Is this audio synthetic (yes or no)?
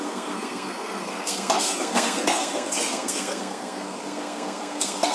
yes